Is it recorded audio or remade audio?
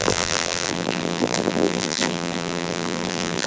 remade